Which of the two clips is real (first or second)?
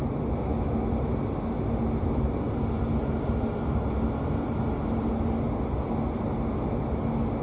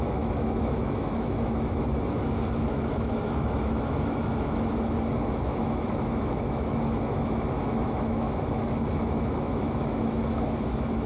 first